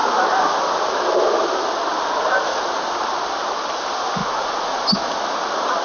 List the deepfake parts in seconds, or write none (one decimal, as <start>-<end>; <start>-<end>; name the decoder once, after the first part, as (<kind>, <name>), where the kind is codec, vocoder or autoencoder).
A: 4.2-4.8 (vocoder, Vocos)